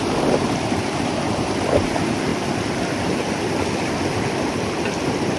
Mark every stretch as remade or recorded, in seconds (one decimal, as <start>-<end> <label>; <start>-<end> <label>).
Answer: 0.0-5.4 recorded